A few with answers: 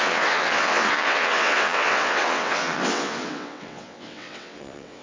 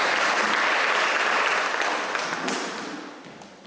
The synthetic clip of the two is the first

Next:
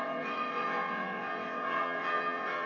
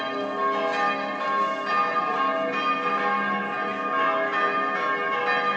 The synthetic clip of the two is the first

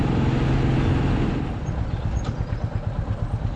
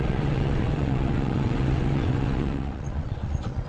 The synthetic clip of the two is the second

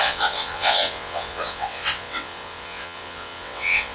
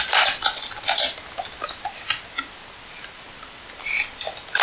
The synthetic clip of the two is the first